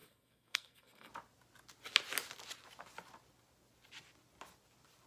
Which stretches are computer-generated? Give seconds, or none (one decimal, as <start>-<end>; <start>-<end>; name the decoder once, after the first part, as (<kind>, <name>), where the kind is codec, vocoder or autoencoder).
0.0-1.1 (codec, SNAC)